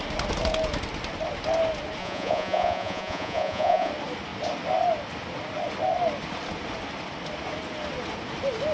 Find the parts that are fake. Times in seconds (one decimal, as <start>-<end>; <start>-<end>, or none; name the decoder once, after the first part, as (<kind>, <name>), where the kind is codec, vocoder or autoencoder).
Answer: 2.0-3.9 (vocoder, Vocos)